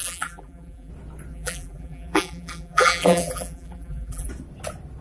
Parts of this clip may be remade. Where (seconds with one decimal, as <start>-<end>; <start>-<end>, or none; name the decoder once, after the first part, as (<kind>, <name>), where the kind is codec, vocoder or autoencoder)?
0.0-0.9 (vocoder, BigVGAN v2); 1.3-4.3